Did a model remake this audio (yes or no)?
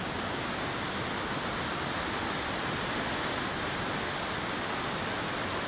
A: no